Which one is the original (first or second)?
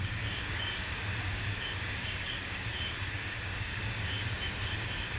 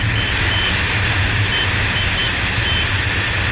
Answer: second